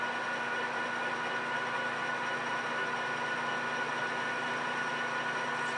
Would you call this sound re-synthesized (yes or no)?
no